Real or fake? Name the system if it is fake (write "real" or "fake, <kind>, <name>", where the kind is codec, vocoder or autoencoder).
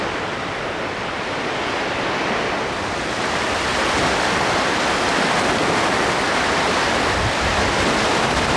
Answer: real